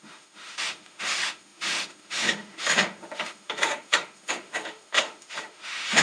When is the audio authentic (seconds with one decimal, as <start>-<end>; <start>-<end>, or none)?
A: none